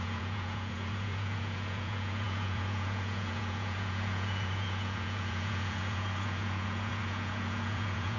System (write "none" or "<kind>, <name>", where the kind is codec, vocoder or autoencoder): vocoder, Vocos